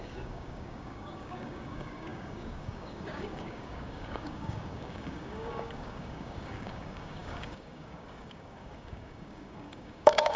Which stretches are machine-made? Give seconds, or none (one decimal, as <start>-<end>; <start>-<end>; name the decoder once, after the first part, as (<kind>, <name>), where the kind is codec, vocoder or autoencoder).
0.0-10.4 (codec, DAC)